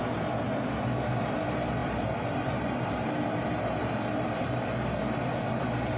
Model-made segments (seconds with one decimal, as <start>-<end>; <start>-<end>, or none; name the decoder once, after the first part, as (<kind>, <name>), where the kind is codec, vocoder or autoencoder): 1.8-5.4 (vocoder, BigVGAN v2)

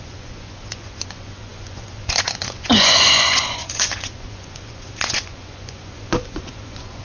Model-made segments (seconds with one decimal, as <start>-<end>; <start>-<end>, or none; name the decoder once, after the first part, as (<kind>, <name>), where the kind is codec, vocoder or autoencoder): 0.0-7.0 (vocoder, Vocos)